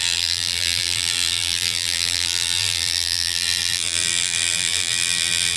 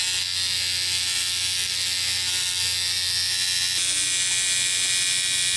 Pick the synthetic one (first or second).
first